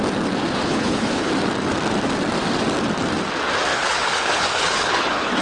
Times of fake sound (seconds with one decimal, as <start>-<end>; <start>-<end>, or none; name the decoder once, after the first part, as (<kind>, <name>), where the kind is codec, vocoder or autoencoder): 0.6-1.3 (codec, HILCodec); 3.7-5.4